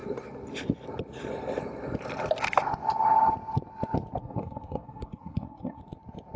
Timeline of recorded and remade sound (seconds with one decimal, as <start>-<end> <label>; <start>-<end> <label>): 0.0-4.2 recorded; 4.2-5.8 remade; 5.8-6.4 recorded

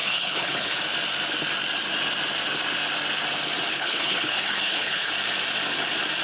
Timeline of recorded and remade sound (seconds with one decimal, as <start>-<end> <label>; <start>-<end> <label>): 0.0-0.8 remade; 0.8-3.7 recorded; 3.7-5.1 remade; 5.1-6.2 recorded

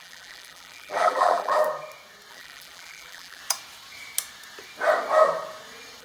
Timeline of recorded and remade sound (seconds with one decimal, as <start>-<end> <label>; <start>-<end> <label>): 0.0-1.6 remade; 1.6-2.3 recorded; 2.3-3.4 remade; 3.4-6.0 recorded

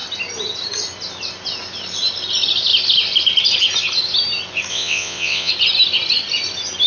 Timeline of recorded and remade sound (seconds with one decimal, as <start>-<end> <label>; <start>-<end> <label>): 0.0-4.7 recorded; 4.7-5.5 remade; 5.5-6.9 recorded

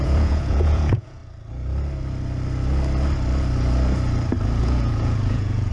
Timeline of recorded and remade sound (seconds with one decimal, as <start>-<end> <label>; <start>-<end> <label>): 0.0-1.2 remade; 1.2-4.6 recorded; 4.6-5.7 remade

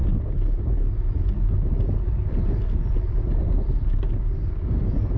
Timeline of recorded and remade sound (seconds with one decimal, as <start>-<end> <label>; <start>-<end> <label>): 0.0-5.2 recorded

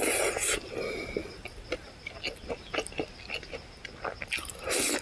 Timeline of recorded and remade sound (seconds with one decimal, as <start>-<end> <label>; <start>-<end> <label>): 0.0-5.0 recorded

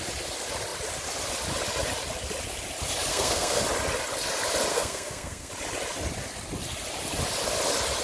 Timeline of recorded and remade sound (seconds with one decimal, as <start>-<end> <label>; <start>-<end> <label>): 0.0-3.1 recorded; 3.1-3.6 remade; 3.6-4.7 recorded; 4.7-5.5 remade; 5.5-8.0 recorded